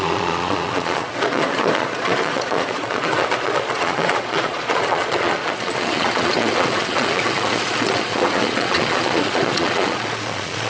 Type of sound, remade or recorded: remade